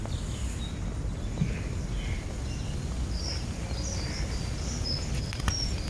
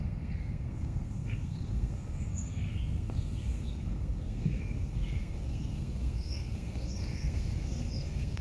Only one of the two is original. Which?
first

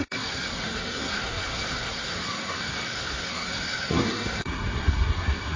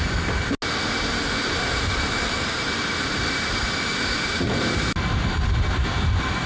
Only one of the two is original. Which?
second